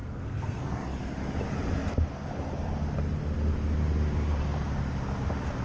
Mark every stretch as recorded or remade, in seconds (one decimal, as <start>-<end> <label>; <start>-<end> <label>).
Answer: 0.0-0.8 remade; 0.8-5.6 recorded